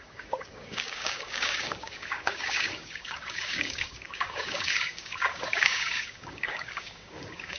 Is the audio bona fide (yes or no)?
no